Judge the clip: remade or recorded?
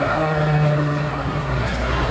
remade